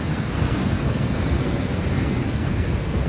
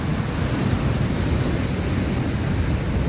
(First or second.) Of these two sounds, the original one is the second